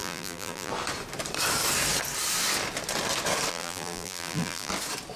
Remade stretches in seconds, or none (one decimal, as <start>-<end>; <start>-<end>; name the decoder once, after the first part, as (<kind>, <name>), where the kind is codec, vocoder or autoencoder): 0.0-0.7 (vocoder, BigVGAN v2); 3.5-4.7